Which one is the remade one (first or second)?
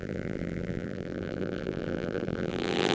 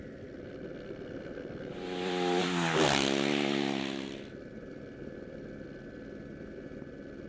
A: first